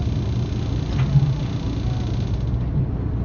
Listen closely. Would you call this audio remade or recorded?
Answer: recorded